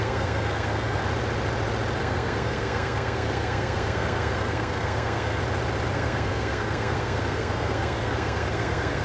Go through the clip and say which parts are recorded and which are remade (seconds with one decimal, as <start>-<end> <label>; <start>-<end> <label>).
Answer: 0.0-1.0 remade; 1.0-2.0 recorded; 2.0-5.4 remade; 5.4-5.9 recorded; 5.9-9.0 remade